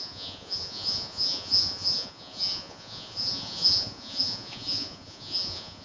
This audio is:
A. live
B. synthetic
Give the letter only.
B